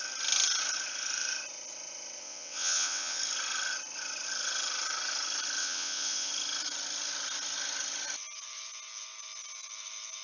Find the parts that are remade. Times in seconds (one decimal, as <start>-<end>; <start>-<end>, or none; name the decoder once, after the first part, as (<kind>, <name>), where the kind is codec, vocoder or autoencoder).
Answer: 2.2-3.2 (vocoder, WaveNeXt); 5.6-6.3